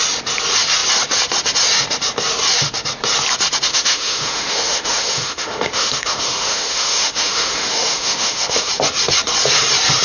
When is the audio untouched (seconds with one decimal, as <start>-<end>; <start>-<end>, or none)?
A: 0.0-3.7; 8.7-10.0